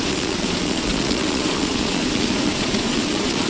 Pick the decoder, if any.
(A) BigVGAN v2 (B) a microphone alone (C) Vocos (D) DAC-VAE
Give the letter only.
C